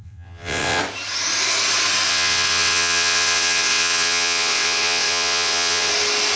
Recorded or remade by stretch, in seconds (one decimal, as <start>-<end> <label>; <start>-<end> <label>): 0.0-0.8 remade; 0.8-2.1 recorded; 2.1-5.9 remade; 5.9-6.4 recorded